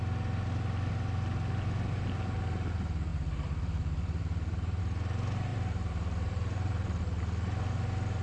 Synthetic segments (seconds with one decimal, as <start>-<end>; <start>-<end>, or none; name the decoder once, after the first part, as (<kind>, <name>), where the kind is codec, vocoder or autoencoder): 3.1-4.8 (vocoder, BigVGAN v2); 5.5-7.0